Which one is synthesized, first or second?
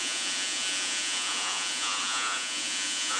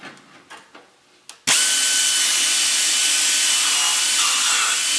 first